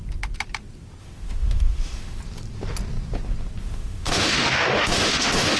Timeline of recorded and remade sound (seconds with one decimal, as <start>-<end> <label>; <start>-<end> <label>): 0.0-1.0 recorded; 1.0-2.2 remade; 2.2-3.6 recorded; 3.6-5.6 remade